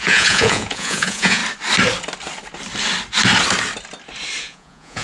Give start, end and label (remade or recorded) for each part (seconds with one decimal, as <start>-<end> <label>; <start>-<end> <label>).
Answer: 0.0-1.4 remade; 1.4-4.4 recorded; 4.4-5.0 remade